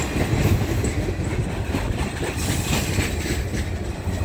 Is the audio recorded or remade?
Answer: recorded